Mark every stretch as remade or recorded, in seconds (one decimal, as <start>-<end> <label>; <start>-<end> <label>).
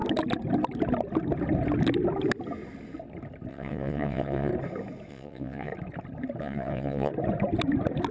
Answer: 0.0-3.5 recorded; 3.5-4.5 remade; 4.5-5.1 recorded; 5.1-5.7 remade; 5.7-6.4 recorded; 6.4-7.1 remade; 7.1-8.1 recorded